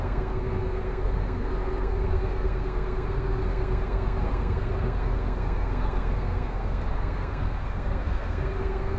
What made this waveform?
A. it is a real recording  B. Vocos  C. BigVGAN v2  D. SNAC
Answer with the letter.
D